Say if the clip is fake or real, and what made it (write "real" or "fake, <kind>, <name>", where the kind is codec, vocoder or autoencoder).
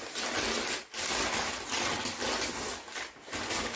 real